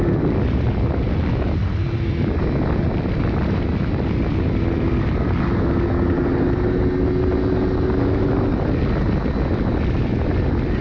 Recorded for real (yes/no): yes